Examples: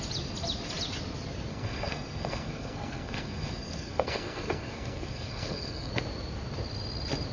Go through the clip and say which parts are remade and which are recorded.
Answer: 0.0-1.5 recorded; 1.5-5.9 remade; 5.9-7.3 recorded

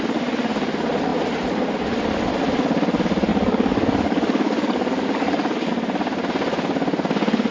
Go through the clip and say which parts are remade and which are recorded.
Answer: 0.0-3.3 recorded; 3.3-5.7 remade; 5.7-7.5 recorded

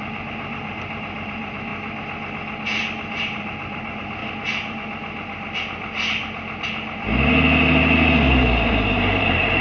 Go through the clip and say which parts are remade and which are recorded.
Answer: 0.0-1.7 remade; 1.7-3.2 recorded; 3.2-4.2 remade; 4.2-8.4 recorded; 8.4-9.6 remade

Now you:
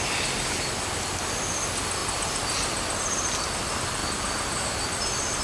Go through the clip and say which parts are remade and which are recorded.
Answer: 0.0-5.4 recorded